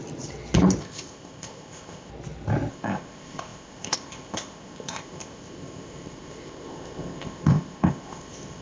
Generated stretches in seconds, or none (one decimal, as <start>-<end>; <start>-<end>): 0.8-2.1; 2.7-8.6